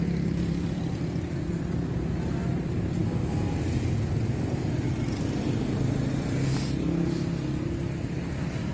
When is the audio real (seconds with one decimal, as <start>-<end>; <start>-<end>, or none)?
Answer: 0.0-8.7